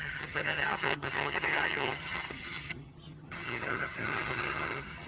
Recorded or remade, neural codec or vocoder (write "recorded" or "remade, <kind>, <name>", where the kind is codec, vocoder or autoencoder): remade, vocoder, HiFi-GAN